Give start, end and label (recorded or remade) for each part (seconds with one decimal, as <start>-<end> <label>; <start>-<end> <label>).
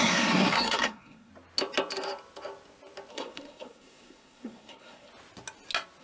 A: 0.0-1.3 remade; 1.3-3.1 recorded; 3.1-5.1 remade; 5.1-6.0 recorded